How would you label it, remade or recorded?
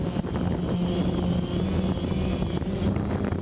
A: recorded